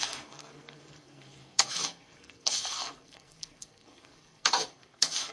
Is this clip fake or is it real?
fake